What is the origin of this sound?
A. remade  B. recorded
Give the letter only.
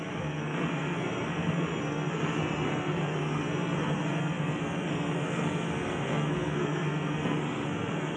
A